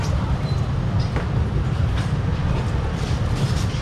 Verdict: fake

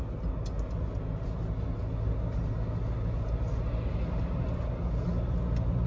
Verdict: real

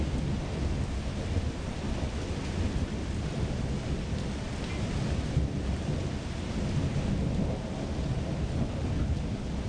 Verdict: real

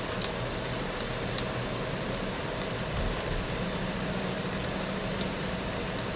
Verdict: real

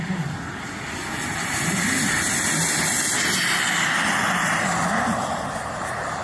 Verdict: real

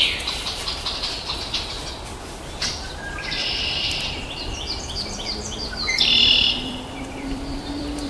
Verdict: fake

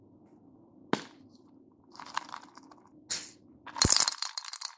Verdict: real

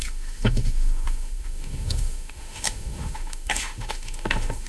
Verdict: fake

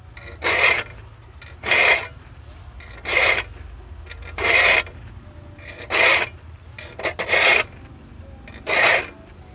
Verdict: real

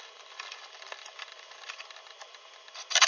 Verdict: real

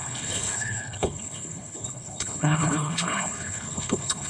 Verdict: fake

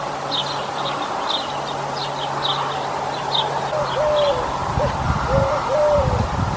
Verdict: real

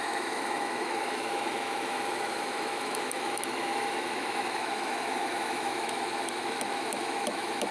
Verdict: fake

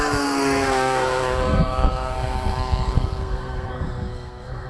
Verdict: fake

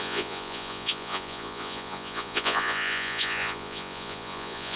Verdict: fake